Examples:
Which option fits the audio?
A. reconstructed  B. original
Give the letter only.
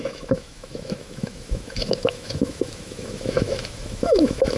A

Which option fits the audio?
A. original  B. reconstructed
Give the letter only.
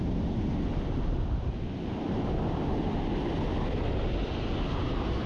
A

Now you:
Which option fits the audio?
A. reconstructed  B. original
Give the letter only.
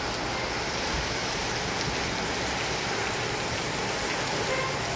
B